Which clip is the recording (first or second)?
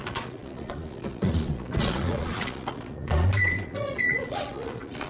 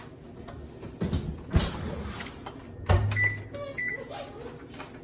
second